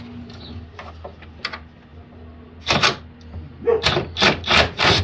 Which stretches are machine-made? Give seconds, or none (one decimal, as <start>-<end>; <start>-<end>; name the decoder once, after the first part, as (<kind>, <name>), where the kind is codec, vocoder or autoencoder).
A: none